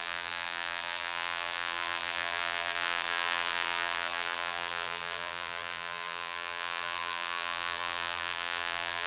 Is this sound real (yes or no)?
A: no